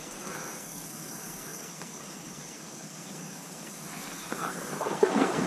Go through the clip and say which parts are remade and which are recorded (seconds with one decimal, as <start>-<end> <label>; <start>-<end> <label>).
0.0-5.5 remade